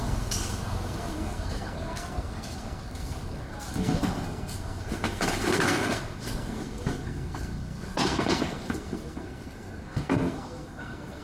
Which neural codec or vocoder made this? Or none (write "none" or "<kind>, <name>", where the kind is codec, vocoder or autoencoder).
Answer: codec, SNAC